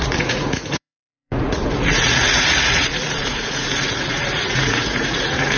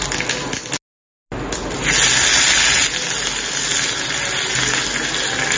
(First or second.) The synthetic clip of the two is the first